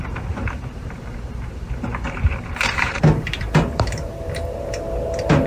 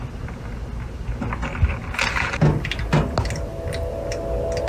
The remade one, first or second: first